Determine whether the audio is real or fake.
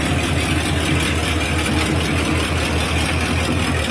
real